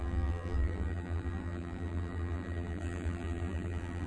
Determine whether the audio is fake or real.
fake